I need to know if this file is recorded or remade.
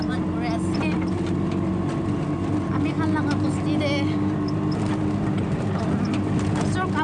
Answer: recorded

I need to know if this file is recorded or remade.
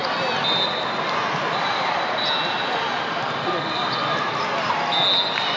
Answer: recorded